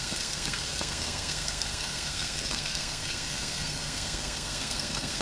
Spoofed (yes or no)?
yes